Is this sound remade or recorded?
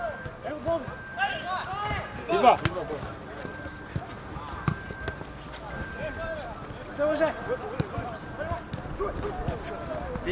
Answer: recorded